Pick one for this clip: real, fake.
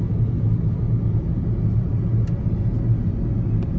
real